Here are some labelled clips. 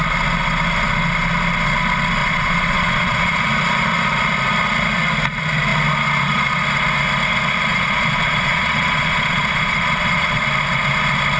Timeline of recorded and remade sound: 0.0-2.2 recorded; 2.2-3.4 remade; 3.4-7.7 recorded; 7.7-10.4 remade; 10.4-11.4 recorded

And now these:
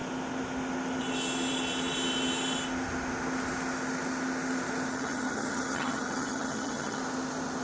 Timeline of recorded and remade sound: 0.0-4.9 recorded; 4.9-7.0 remade; 7.0-7.6 recorded

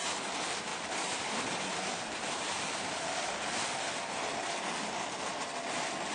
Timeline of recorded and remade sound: 0.0-0.7 recorded; 0.7-3.7 remade; 3.7-6.1 recorded

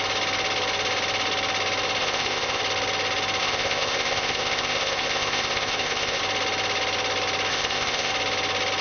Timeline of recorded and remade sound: 0.0-2.0 recorded; 2.0-2.6 remade; 2.6-3.4 recorded; 3.4-6.2 remade; 6.2-7.5 recorded; 7.5-8.1 remade; 8.1-8.8 recorded